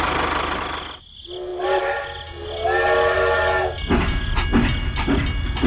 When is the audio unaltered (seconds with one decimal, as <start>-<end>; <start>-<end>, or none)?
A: 0.0-5.7